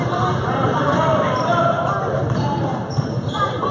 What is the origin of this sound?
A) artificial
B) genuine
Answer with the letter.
A